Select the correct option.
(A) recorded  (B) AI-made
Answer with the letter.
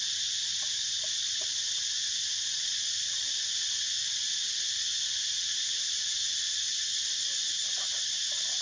A